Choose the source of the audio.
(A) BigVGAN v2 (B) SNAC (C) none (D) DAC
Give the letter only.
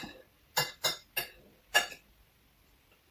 C